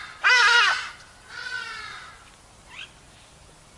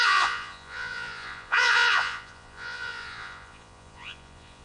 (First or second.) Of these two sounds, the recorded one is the first